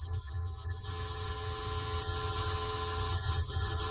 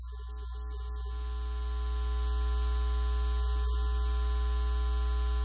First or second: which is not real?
first